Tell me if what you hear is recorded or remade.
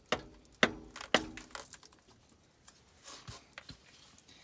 recorded